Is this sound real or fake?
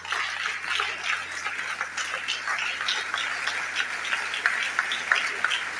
real